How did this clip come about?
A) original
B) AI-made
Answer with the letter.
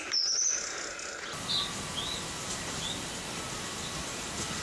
A